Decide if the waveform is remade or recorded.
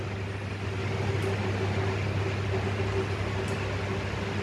recorded